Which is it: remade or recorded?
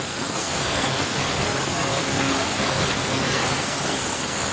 remade